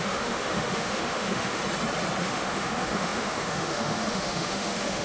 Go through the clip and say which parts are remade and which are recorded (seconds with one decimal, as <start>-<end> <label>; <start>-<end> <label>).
0.0-1.6 remade; 1.6-2.2 recorded; 2.2-5.0 remade